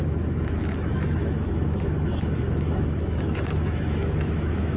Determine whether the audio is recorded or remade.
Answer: remade